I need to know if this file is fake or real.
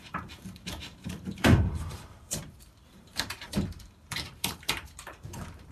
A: fake